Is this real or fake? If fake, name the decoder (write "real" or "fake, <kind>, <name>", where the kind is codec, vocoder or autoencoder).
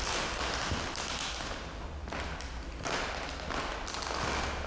real